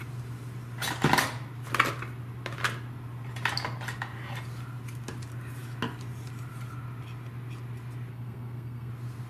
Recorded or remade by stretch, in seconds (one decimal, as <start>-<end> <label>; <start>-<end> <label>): 0.0-8.1 recorded; 8.1-8.9 remade; 8.9-9.3 recorded